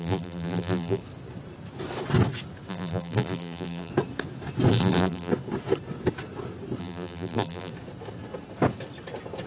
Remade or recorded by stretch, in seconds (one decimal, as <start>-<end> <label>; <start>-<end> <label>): 0.0-1.0 remade; 1.0-2.7 recorded; 2.7-3.9 remade; 3.9-4.7 recorded; 4.7-5.3 remade; 5.3-6.8 recorded; 6.8-7.7 remade; 7.7-9.5 recorded